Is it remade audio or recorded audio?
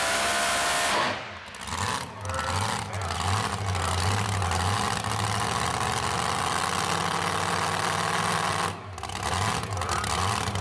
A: recorded